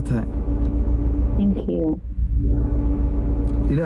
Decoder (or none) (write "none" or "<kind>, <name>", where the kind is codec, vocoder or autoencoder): autoencoder, DAC-VAE